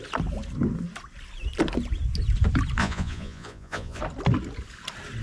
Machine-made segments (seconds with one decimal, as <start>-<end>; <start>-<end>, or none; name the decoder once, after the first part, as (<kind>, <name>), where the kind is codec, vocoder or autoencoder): 2.8-4.0 (vocoder, Vocos)